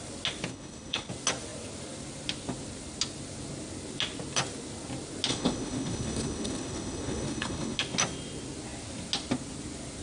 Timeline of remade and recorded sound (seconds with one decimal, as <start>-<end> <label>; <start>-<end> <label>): 0.0-0.5 recorded; 0.5-1.1 remade; 1.1-5.3 recorded; 5.3-7.8 remade; 7.8-10.0 recorded